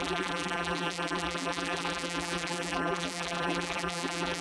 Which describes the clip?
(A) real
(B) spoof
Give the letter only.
B